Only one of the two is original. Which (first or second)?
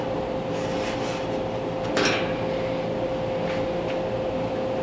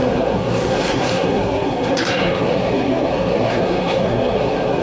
first